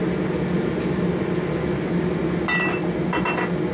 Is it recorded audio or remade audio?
recorded